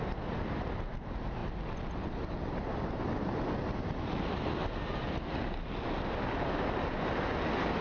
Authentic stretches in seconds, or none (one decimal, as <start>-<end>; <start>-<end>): 0.0-7.8